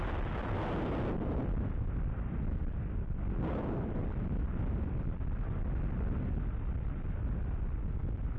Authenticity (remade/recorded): recorded